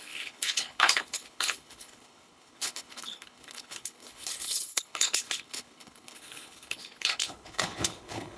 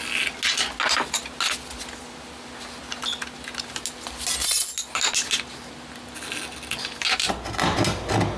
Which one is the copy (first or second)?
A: first